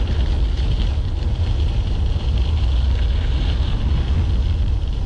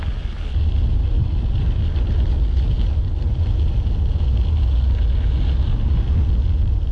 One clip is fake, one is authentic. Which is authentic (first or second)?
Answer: second